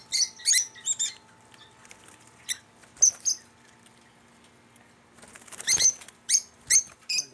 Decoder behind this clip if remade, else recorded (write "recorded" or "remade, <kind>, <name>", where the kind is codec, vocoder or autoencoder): recorded